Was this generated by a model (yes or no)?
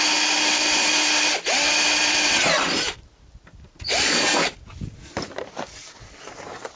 no